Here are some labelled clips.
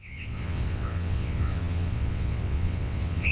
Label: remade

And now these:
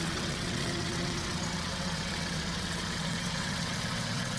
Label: remade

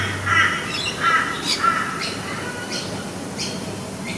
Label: recorded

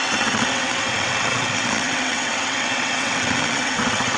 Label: remade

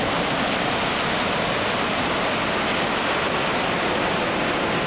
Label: recorded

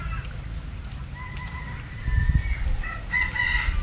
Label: recorded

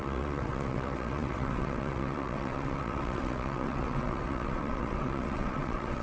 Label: remade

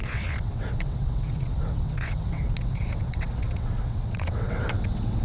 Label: remade